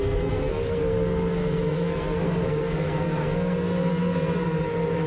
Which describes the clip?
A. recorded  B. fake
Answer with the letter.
B